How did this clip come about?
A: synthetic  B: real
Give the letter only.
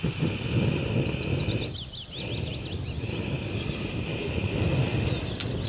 B